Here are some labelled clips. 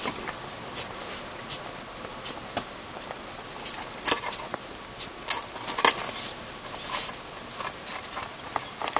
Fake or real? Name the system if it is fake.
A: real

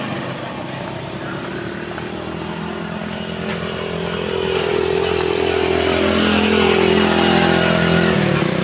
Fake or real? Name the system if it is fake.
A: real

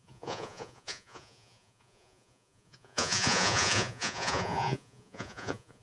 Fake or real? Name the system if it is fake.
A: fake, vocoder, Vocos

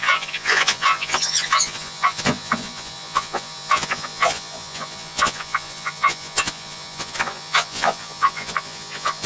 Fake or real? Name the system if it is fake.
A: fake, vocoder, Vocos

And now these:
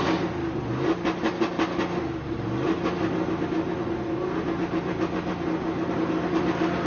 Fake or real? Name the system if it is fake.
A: real